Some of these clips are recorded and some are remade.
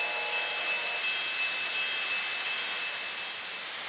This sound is recorded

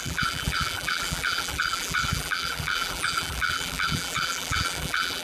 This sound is remade